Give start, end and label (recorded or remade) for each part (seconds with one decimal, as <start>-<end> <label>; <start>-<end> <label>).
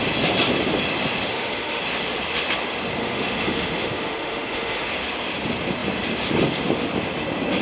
0.0-1.3 recorded; 1.3-1.8 remade; 1.8-3.0 recorded; 3.0-4.9 remade; 4.9-7.6 recorded